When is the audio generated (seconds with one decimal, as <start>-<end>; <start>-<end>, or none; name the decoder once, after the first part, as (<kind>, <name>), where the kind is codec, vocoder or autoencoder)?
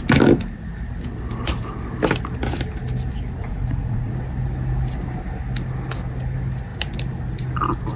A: 3.4-4.1 (vocoder, Vocos)